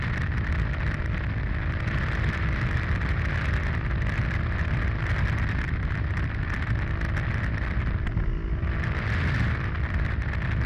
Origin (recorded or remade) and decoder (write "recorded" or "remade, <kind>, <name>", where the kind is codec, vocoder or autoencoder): recorded